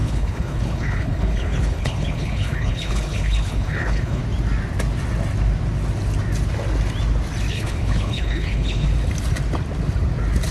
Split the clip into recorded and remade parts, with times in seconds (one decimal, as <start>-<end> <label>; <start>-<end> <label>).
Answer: 0.0-4.2 remade; 4.2-7.5 recorded; 7.5-8.9 remade; 8.9-10.5 recorded